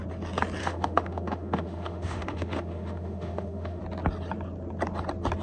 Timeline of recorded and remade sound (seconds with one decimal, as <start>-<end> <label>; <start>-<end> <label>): 0.0-0.6 recorded; 0.6-3.8 remade; 3.8-5.4 recorded